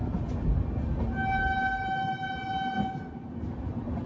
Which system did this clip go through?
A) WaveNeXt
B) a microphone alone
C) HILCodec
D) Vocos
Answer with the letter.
B